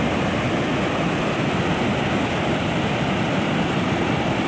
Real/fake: real